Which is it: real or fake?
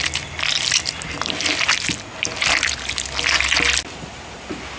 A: real